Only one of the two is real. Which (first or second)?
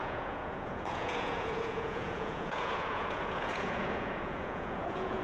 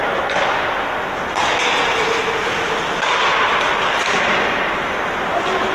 second